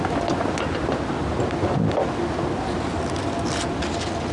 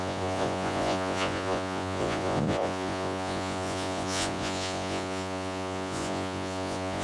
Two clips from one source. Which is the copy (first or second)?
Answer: second